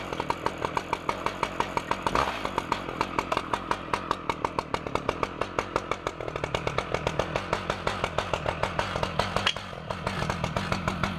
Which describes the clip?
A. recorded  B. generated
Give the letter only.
A